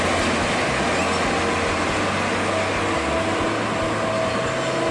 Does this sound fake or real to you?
real